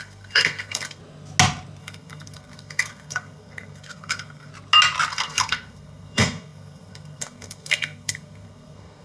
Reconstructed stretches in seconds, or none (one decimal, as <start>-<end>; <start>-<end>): 0.0-1.0; 1.8-4.5; 5.1-9.0